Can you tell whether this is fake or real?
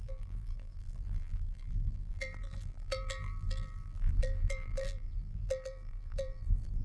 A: fake